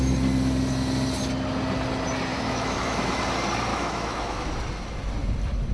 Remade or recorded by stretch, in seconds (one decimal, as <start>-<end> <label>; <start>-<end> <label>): 0.0-2.3 recorded; 2.3-3.2 remade; 3.2-3.7 recorded; 3.7-4.5 remade; 4.5-5.7 recorded